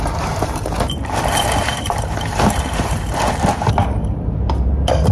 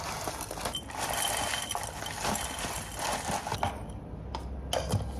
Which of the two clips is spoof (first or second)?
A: first